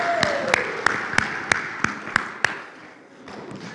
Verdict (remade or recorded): recorded